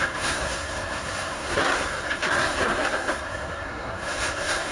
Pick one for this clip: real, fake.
fake